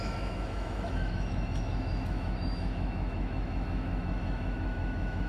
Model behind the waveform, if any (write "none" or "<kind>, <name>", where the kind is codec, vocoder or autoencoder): autoencoder, DAC-VAE